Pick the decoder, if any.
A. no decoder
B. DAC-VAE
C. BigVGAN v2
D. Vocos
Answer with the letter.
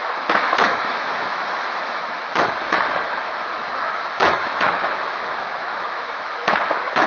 B